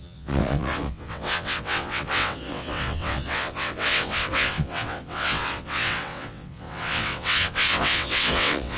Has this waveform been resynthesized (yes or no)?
yes